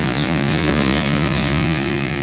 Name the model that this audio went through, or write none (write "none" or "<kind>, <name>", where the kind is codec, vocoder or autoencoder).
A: vocoder, Vocos